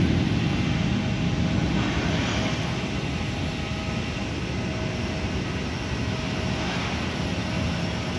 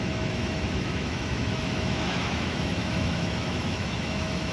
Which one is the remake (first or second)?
second